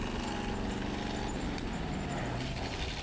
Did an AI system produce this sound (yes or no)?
no